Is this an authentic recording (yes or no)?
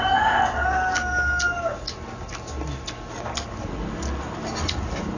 yes